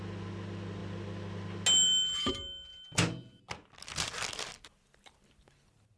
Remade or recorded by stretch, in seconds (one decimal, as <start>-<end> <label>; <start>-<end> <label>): 0.0-6.0 recorded